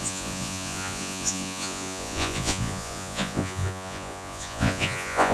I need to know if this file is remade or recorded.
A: remade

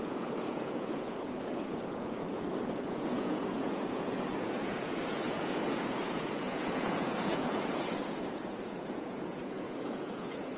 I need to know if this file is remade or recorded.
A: remade